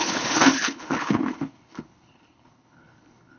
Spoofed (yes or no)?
yes